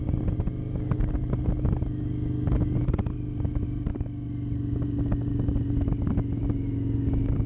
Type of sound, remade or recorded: recorded